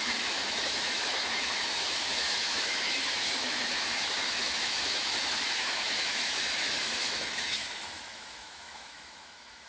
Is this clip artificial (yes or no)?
yes